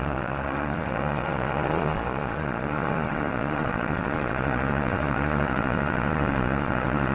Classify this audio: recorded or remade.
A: remade